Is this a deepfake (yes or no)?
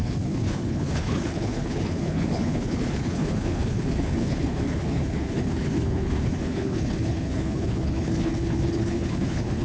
yes